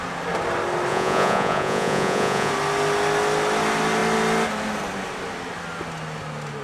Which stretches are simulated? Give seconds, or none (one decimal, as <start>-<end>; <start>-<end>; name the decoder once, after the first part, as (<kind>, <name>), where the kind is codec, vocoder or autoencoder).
0.9-2.5 (vocoder, Vocos)